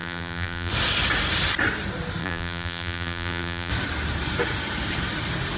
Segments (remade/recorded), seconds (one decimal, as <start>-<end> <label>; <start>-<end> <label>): 0.0-0.7 remade; 0.7-2.2 recorded; 2.2-3.7 remade; 3.7-5.6 recorded